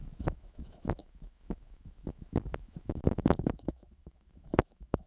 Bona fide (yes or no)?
no